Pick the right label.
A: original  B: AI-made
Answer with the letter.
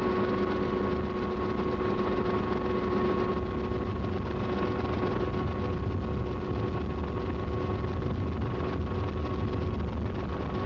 A